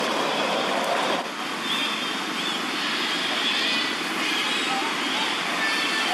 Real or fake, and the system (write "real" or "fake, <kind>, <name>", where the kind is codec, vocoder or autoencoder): real